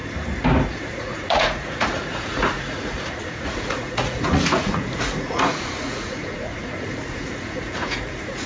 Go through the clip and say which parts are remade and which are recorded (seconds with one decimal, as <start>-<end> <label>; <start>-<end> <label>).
0.0-0.7 recorded; 0.7-8.5 remade